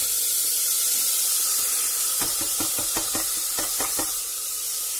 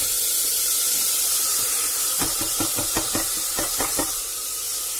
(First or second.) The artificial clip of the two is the first